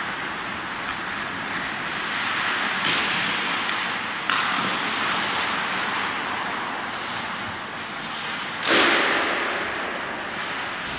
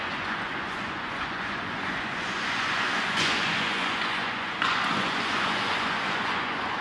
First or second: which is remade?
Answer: second